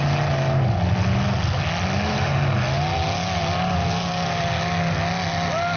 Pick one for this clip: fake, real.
real